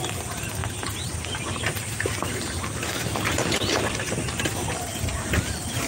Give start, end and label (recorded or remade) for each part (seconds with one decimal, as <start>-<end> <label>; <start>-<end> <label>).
0.0-5.9 recorded